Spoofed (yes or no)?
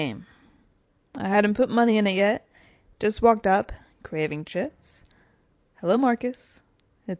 yes